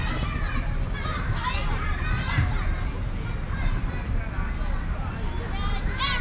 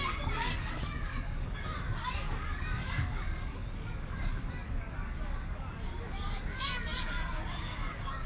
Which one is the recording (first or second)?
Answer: first